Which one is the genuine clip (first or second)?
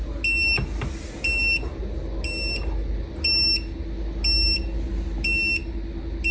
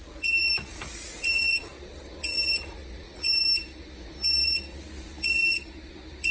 first